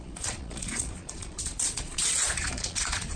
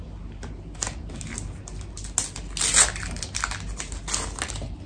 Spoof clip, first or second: first